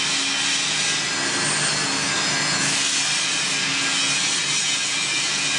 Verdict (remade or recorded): recorded